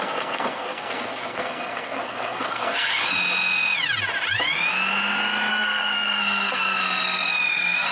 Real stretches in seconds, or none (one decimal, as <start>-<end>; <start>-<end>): 3.0-5.5